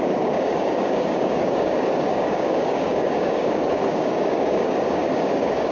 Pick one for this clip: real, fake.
fake